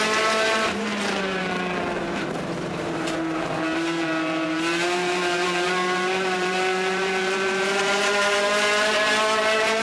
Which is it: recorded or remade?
remade